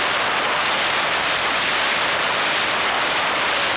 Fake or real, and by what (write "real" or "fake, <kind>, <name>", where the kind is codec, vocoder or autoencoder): real